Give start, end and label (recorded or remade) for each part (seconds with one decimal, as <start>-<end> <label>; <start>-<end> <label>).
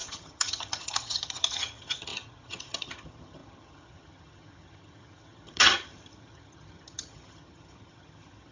0.0-8.5 remade